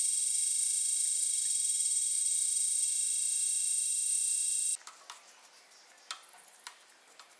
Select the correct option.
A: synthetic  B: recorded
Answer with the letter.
B